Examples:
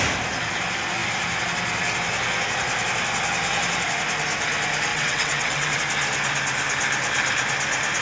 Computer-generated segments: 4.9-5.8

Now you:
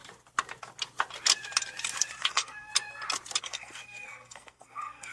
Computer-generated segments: 2.3-2.7; 3.4-5.1

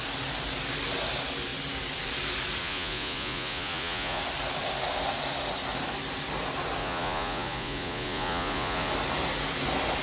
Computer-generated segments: 2.6-4.2; 6.8-8.9

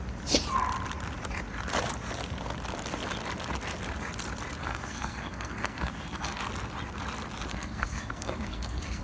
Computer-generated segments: 4.6-6.4; 7.5-9.0

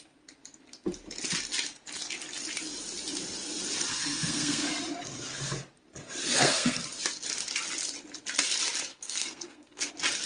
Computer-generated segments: 3.9-4.7; 6.2-6.8; 8.9-9.9

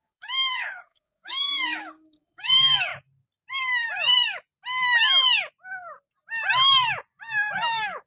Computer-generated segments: 0.0-2.9; 7.5-8.1

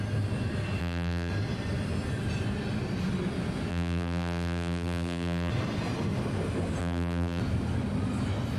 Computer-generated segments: 0.8-1.3; 3.7-5.5; 6.8-7.4